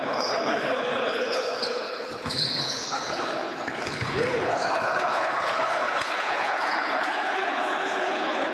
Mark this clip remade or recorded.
remade